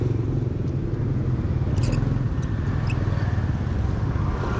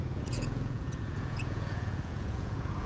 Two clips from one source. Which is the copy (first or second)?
second